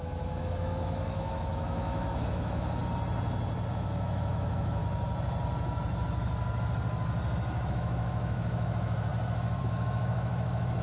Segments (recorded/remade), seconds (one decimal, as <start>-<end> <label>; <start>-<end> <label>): 0.0-2.8 remade; 2.8-3.7 recorded; 3.7-4.8 remade; 4.8-7.7 recorded; 7.7-9.1 remade; 9.1-9.6 recorded; 9.6-10.8 remade